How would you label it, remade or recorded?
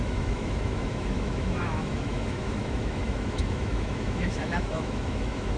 remade